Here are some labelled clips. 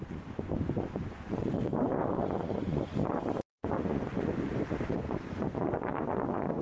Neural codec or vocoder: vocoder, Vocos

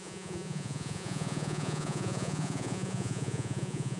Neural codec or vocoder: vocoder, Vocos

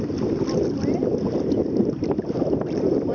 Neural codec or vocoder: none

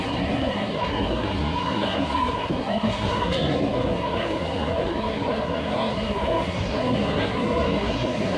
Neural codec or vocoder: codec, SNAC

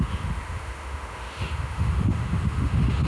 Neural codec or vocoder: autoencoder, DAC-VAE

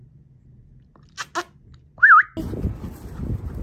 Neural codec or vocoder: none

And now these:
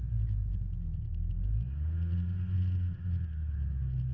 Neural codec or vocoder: none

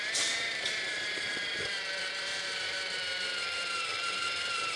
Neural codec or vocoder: vocoder, BigVGAN v2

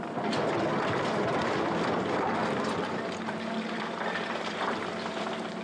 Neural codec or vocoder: vocoder, BigVGAN v2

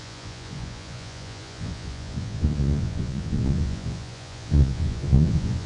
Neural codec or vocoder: vocoder, Vocos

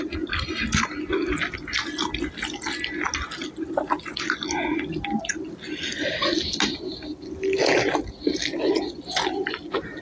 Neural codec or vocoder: none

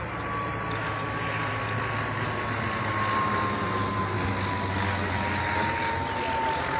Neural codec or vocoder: none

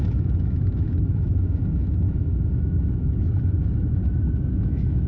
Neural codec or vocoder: autoencoder, DAC-VAE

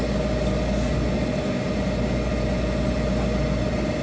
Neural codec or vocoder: none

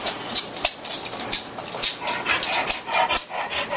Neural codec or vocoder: none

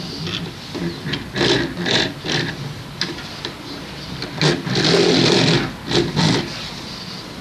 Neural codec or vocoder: none